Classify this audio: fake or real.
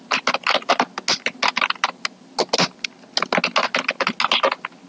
real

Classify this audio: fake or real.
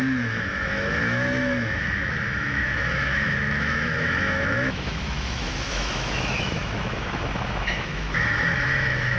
fake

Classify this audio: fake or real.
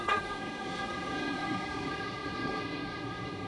fake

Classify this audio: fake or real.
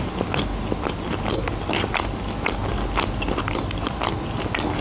real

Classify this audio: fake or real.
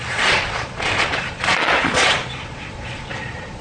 fake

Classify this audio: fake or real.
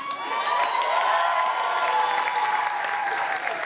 real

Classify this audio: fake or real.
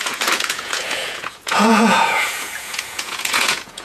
fake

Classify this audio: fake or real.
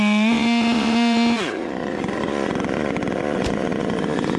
fake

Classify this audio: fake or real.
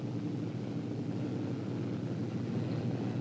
real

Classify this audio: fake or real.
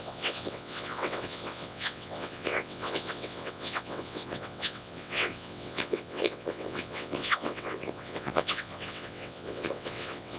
fake